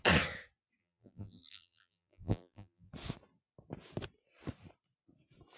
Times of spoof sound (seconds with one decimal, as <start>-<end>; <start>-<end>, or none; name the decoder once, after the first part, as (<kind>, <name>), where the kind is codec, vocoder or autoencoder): 0.8-2.9 (vocoder, BigVGAN v2)